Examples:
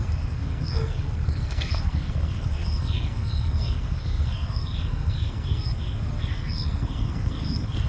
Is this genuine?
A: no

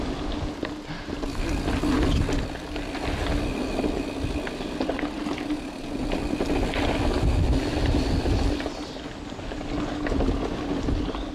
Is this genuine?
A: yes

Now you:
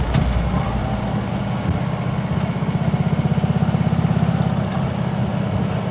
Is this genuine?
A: yes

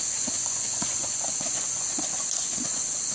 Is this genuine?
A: no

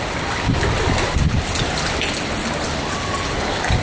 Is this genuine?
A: yes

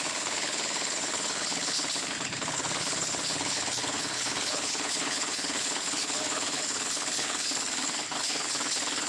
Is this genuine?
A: no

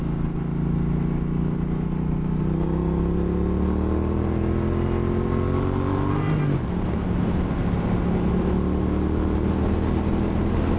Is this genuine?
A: yes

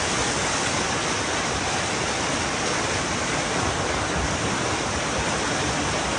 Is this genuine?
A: yes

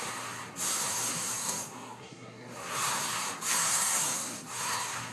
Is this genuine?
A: no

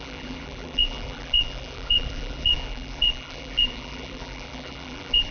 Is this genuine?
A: no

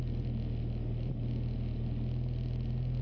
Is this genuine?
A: yes